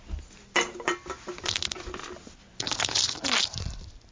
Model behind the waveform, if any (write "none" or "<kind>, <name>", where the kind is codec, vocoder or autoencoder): none